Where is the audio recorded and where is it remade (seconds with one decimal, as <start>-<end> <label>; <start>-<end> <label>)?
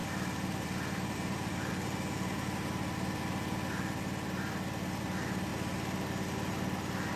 0.0-1.7 remade; 1.7-7.2 recorded